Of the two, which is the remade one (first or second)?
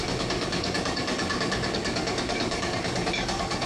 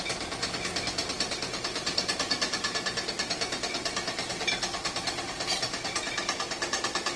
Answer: first